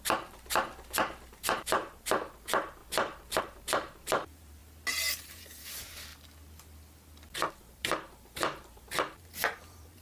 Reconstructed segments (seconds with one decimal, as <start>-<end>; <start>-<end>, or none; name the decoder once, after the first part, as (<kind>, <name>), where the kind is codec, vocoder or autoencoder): 0.0-2.8 (vocoder, BigVGAN v2); 3.4-4.6; 5.2-6.1; 7.5-10.0